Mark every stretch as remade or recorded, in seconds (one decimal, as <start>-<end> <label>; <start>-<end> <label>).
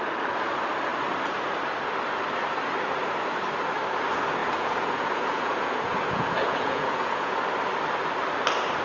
0.0-4.4 recorded; 4.4-7.3 remade; 7.3-8.8 recorded